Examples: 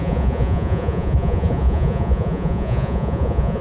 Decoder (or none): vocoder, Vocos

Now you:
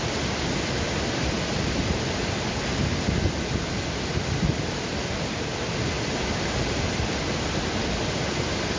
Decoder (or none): none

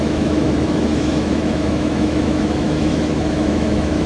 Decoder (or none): autoencoder, DAC-VAE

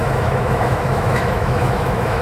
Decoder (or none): autoencoder, DAC-VAE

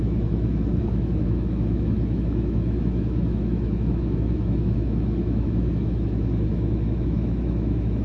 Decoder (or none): autoencoder, DAC-VAE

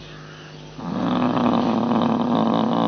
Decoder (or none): none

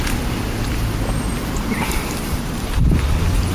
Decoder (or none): none